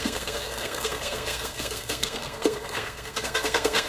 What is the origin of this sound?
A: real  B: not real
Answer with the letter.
B